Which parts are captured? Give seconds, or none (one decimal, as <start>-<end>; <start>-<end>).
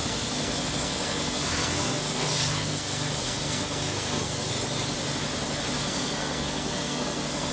4.5-5.8